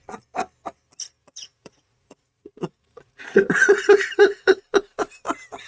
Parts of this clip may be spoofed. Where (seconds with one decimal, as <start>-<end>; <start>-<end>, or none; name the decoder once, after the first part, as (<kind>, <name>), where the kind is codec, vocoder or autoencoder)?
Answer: 1.2-4.6 (vocoder, Vocos)